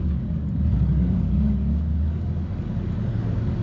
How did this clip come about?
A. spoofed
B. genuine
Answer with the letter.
A